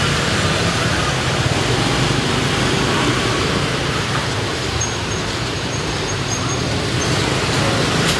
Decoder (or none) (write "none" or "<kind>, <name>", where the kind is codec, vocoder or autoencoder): vocoder, BigVGAN v2